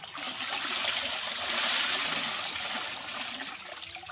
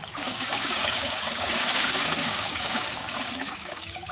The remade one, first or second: second